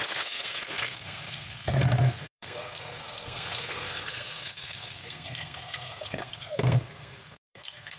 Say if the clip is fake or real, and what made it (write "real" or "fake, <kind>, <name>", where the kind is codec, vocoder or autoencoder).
fake, codec, SNAC